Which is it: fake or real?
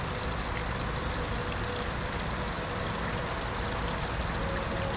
real